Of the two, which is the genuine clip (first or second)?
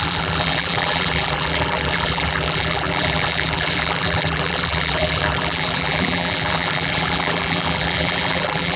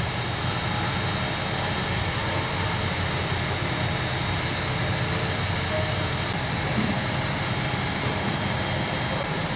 second